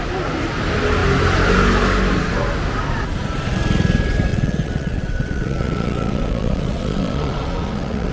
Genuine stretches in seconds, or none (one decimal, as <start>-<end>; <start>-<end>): 0.0-4.3